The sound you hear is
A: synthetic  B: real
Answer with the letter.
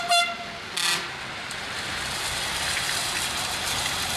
B